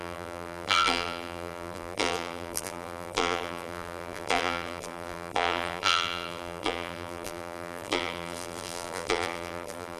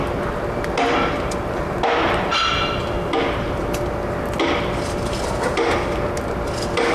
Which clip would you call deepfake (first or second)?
first